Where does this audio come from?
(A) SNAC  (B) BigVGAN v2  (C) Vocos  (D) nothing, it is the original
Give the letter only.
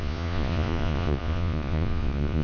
C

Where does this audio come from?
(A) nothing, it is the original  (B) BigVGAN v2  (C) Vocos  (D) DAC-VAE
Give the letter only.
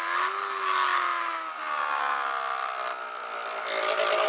A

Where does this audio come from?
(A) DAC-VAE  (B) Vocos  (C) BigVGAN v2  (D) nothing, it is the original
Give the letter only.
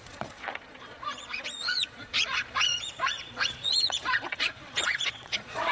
B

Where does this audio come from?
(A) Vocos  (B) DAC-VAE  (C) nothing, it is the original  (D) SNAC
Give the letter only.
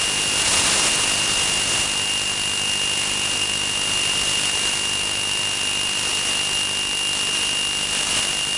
C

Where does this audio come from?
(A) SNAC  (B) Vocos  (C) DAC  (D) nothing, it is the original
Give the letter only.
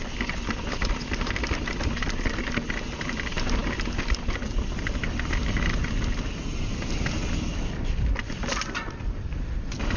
D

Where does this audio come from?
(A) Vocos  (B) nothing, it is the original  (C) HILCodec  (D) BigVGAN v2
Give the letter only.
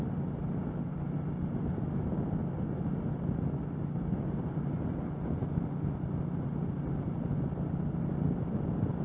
B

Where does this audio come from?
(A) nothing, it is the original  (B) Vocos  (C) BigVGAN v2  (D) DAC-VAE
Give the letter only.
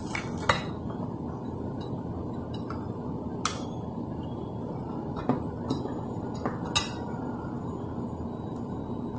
A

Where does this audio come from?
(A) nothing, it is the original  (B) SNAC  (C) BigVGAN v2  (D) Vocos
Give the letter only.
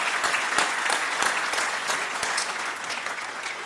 D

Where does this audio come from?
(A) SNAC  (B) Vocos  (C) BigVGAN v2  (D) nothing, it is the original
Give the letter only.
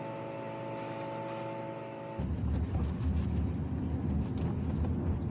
D